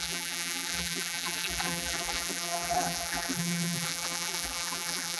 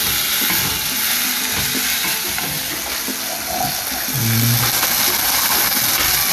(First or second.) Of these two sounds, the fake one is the first